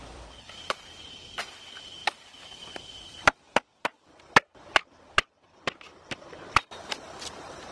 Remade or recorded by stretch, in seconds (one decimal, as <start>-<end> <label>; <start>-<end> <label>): 0.0-7.7 remade